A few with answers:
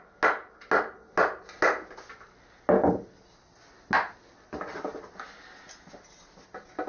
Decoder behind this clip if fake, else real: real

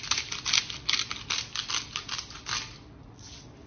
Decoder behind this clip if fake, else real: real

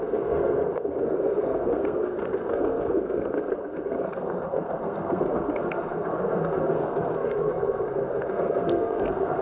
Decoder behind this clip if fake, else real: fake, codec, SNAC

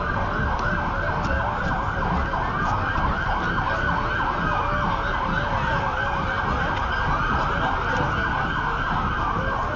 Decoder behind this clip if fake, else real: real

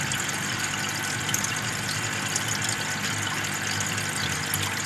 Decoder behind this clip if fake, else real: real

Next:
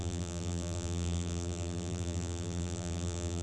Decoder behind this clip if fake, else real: fake, vocoder, BigVGAN v2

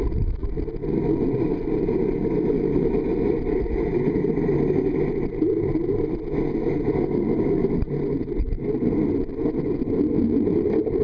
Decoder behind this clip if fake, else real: real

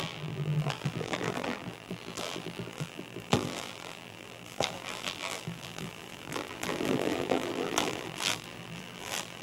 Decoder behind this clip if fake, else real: fake, vocoder, BigVGAN v2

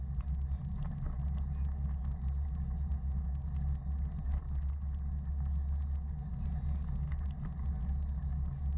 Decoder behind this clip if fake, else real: real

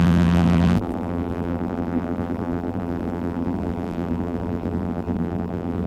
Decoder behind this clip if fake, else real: fake, vocoder, BigVGAN v2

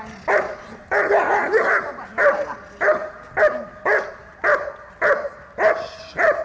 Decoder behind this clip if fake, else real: real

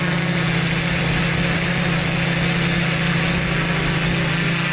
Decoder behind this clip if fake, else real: real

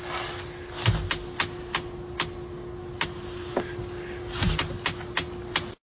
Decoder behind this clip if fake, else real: real